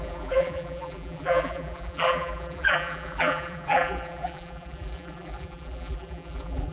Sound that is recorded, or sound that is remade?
remade